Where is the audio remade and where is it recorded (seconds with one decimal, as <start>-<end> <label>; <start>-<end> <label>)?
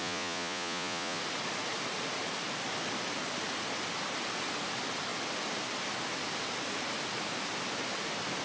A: 0.0-1.2 remade; 1.2-8.4 recorded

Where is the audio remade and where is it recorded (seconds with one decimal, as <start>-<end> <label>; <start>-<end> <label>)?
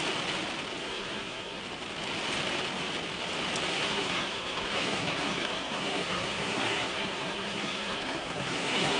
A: 0.0-0.8 recorded; 0.8-1.6 remade; 1.6-3.7 recorded; 3.7-9.0 remade